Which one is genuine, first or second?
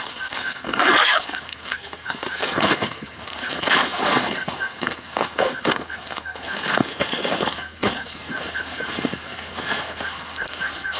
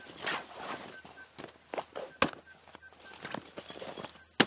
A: second